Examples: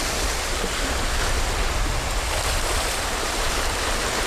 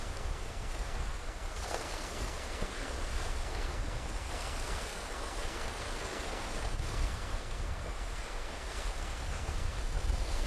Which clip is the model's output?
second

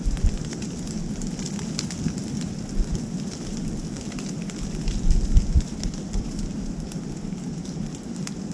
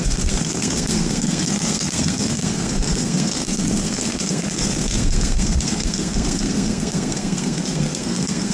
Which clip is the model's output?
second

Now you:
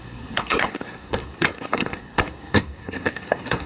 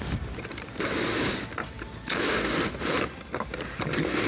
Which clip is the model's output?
first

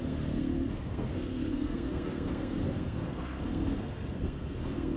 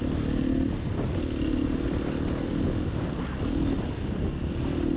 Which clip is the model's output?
first